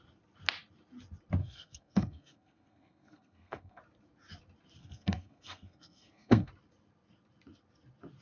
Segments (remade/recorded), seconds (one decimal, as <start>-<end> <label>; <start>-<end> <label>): 0.0-1.4 recorded; 1.4-3.8 remade; 3.8-4.8 recorded; 4.8-6.5 remade; 6.5-8.2 recorded